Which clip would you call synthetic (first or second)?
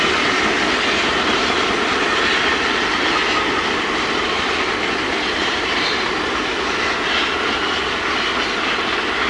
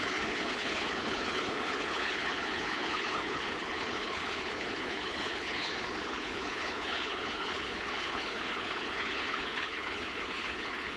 second